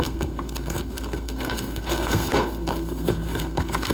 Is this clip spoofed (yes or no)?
yes